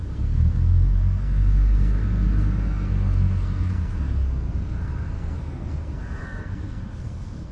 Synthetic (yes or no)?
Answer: yes